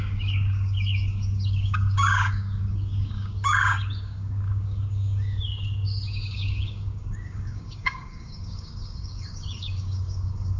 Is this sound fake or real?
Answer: fake